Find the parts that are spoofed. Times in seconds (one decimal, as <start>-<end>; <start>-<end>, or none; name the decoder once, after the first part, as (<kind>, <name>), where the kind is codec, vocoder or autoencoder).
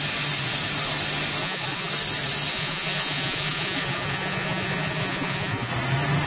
1.4-1.9 (vocoder, Vocos); 2.5-5.7